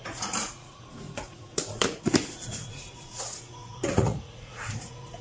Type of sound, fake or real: fake